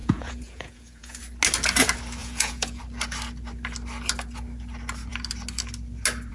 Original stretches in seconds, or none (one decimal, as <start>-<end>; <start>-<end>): 1.2-2.2; 2.8-6.3